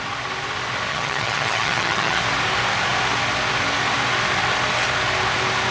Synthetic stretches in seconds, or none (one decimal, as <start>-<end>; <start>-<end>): 0.9-2.2